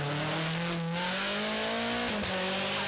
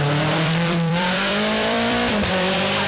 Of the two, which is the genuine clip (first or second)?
first